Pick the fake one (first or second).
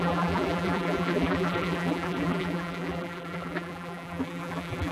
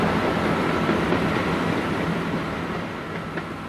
first